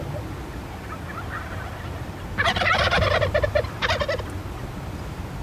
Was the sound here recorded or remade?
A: recorded